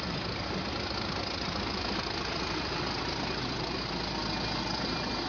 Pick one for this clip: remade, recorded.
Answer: recorded